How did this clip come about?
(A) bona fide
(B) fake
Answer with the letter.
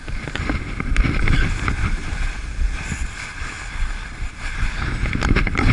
A